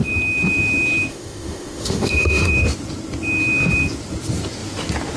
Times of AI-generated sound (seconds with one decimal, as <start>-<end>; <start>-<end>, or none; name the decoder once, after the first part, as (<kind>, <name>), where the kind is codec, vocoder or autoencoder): 1.1-2.5 (autoencoder, DAC-VAE)